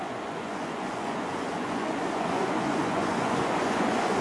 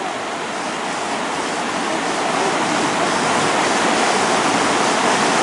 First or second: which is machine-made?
first